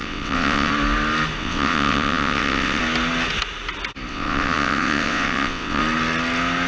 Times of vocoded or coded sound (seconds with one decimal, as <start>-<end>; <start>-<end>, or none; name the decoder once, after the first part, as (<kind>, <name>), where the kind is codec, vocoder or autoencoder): 0.0-0.7 (vocoder, WaveNeXt); 1.4-2.8; 4.1-5.8